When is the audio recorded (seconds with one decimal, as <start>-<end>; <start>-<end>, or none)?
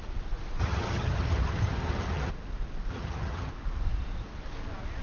0.0-0.6; 2.3-2.9; 3.5-5.0